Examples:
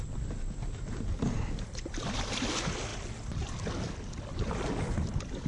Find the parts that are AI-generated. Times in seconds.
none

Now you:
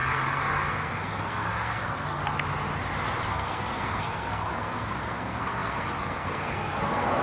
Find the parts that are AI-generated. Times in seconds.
0.0-2.2 (codec, SNAC); 3.3-7.2

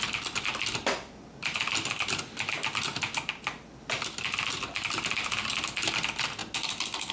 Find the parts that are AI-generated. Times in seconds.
none

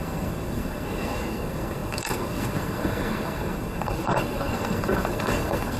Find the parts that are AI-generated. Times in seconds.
0.0-5.8 (codec, SNAC)

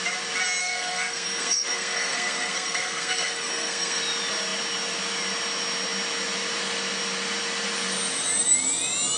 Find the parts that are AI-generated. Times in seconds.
0.6-4.0 (codec, SNAC)

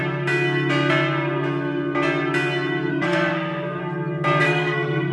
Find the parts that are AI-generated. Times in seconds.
2.9-3.8 (codec, SNAC); 4.4-5.1

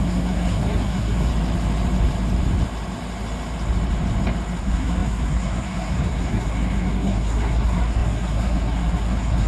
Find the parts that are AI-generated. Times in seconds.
0.0-1.3 (codec, SNAC); 4.6-9.5

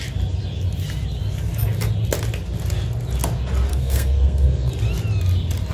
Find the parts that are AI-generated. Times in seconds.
3.7-4.7 (codec, SNAC)